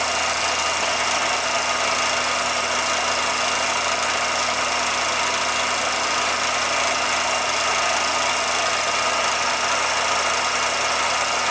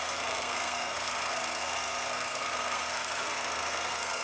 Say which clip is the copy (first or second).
second